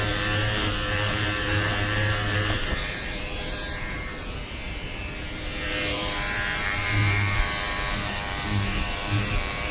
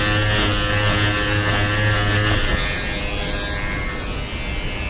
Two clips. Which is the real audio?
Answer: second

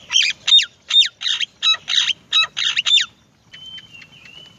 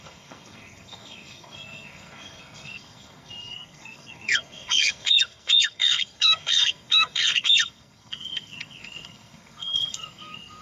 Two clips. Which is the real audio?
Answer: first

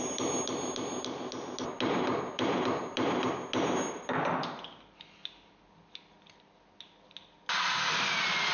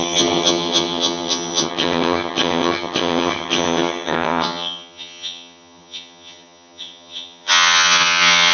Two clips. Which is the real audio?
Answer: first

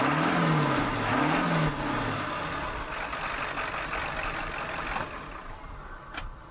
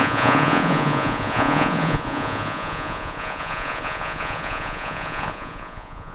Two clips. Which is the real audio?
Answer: first